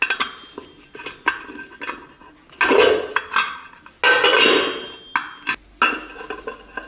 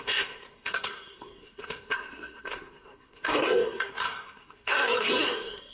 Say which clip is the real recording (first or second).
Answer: first